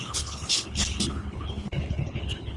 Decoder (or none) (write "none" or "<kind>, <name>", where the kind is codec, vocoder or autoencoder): codec, HILCodec